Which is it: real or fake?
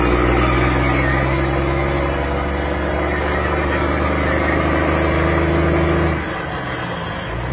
real